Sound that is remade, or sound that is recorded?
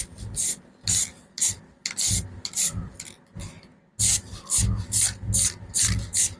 recorded